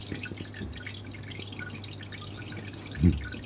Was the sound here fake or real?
real